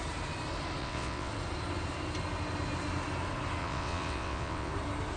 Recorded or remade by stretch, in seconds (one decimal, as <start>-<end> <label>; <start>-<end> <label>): 0.0-0.8 recorded; 0.8-1.3 remade; 1.3-3.6 recorded; 3.6-4.7 remade; 4.7-5.2 recorded